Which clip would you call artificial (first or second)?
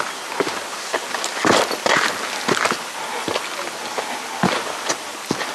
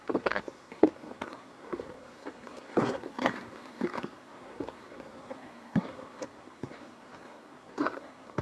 second